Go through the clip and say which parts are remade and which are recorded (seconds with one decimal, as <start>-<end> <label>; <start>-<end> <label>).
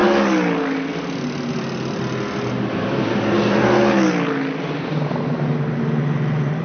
0.0-6.6 recorded